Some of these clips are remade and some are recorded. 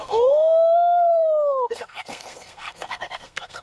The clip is remade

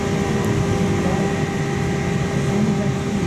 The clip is recorded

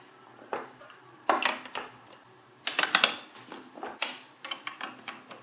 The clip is recorded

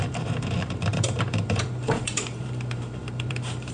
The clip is remade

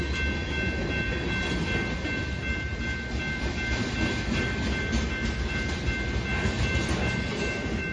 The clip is recorded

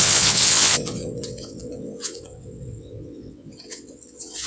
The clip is remade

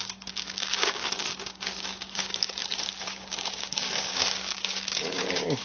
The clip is remade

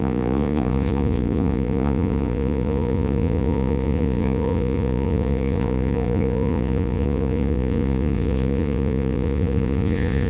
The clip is remade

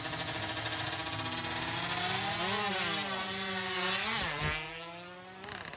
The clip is recorded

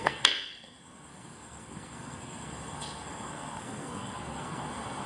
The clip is remade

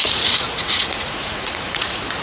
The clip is remade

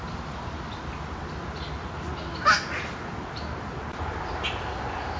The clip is recorded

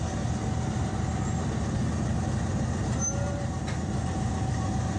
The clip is recorded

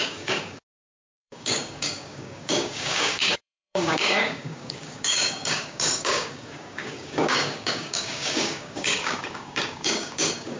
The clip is remade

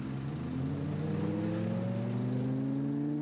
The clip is recorded